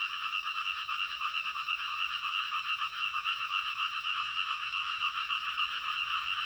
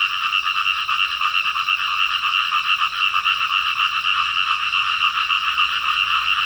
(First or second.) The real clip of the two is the second